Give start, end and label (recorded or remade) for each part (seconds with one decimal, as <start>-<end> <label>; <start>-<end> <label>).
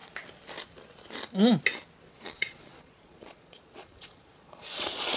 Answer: 0.0-2.1 recorded; 2.1-5.2 remade